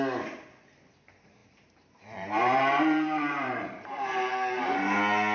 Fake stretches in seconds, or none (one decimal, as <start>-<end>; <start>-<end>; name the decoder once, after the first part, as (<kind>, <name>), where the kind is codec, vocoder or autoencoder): 1.4-4.6 (vocoder, BigVGAN v2)

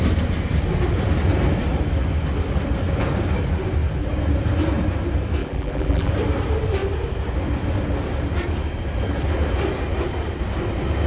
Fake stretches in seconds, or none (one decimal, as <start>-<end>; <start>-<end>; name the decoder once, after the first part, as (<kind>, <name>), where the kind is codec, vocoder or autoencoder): 5.4-6.1 (vocoder, BigVGAN v2)

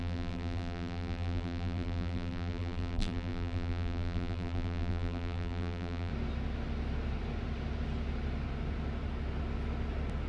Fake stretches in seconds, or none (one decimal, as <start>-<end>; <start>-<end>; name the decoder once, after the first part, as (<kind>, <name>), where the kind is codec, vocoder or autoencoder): 0.0-6.1 (vocoder, BigVGAN v2)

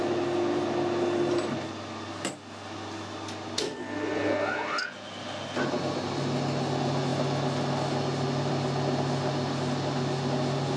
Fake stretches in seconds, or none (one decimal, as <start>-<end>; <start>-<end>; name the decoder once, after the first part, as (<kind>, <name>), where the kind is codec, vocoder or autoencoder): none